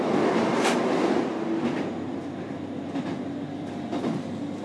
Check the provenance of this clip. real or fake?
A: real